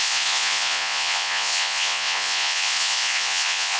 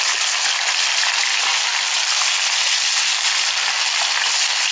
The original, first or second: second